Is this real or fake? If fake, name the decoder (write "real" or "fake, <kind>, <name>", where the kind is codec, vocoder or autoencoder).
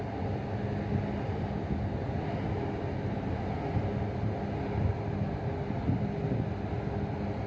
real